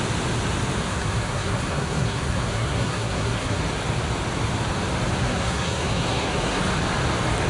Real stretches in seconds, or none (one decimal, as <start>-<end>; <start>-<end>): 0.0-0.8; 3.6-5.2; 6.6-7.5